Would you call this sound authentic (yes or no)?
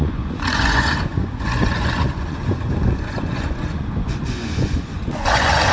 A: no